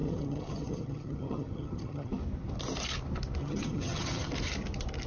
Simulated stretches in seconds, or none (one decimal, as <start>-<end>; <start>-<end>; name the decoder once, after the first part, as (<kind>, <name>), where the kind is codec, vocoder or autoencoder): 0.0-2.2 (vocoder, HiFi-GAN); 3.4-4.3